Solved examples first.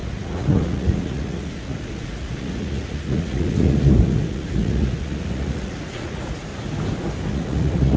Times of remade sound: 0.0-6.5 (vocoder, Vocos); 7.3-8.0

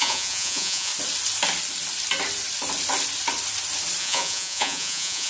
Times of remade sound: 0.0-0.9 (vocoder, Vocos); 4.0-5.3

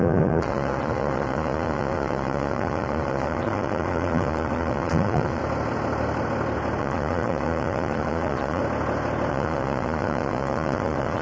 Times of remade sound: 0.0-5.4 (vocoder, Vocos); 6.8-8.6; 9.3-11.2